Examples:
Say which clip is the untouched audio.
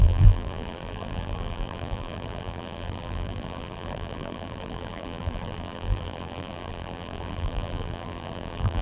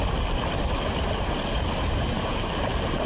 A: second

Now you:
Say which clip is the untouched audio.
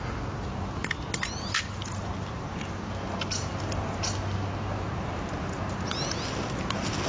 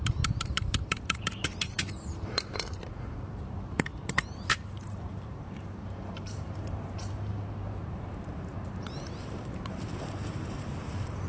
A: first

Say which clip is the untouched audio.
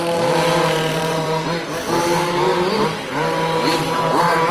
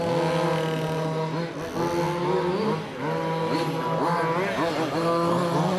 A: second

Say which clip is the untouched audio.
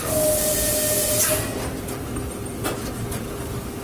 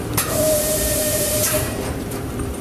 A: first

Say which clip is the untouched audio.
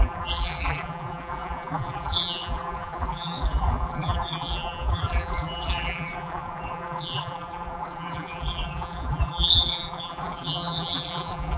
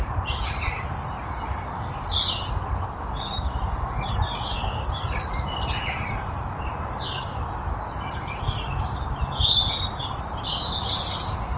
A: second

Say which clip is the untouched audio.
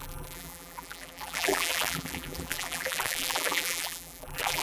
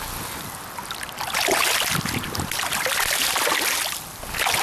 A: second